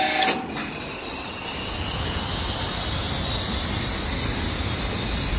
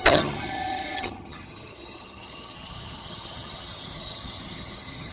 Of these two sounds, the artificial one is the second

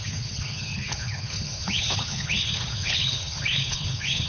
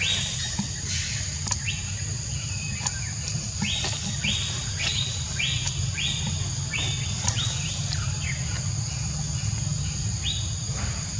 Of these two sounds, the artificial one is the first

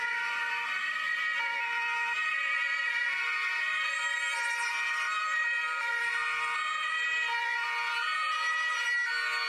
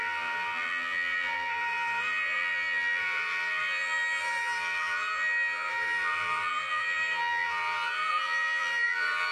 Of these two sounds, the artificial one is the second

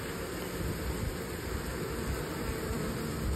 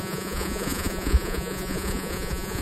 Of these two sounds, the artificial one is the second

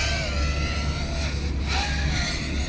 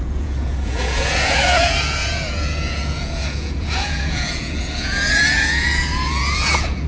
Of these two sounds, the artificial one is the second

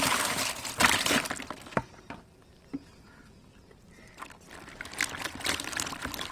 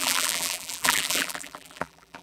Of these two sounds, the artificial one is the second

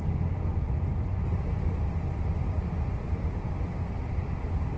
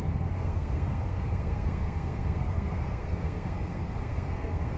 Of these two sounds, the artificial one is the second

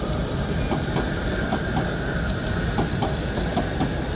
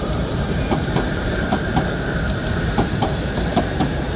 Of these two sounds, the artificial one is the second